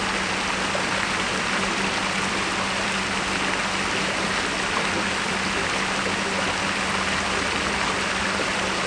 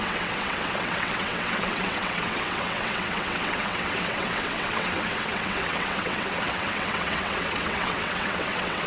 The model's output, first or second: second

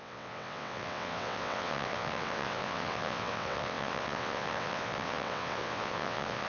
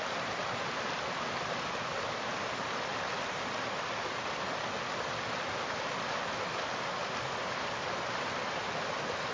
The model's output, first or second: first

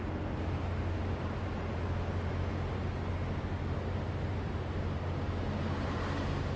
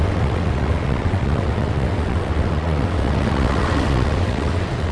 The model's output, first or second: second